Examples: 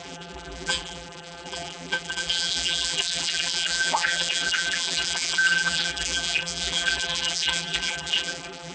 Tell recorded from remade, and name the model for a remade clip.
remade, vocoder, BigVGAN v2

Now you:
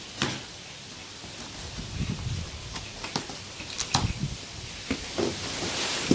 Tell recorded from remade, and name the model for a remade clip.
recorded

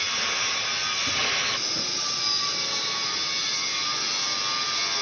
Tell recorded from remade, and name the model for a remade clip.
recorded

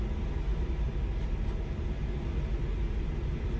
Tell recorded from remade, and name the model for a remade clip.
recorded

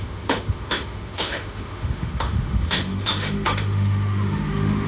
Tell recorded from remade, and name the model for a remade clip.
remade, autoencoder, DAC-VAE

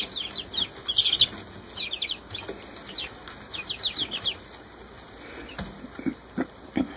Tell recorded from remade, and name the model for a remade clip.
recorded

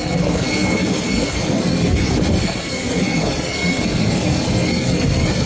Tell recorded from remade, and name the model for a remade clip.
remade, codec, SNAC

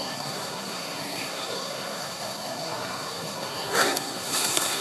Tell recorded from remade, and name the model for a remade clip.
remade, codec, SNAC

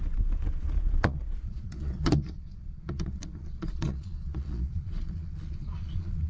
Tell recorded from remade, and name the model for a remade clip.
remade, vocoder, Vocos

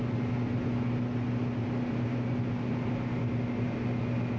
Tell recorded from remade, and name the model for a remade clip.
recorded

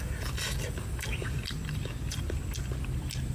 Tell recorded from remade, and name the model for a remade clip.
recorded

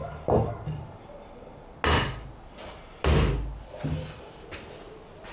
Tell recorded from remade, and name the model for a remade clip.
recorded